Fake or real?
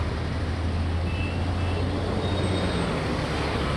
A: real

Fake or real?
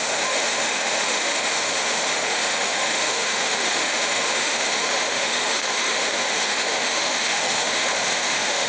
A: fake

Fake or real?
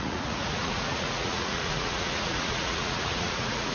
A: fake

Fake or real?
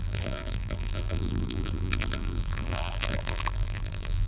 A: fake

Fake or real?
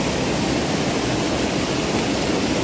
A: real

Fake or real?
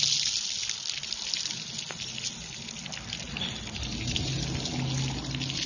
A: real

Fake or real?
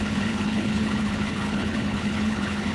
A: fake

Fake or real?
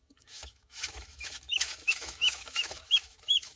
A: fake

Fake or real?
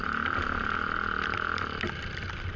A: real